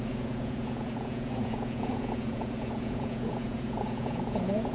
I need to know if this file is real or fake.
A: fake